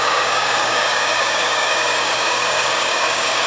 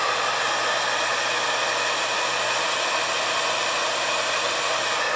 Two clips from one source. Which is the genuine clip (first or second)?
second